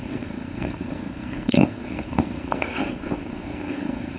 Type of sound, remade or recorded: remade